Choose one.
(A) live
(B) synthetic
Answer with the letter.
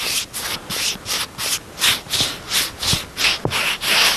A